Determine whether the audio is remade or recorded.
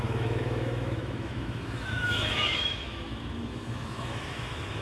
remade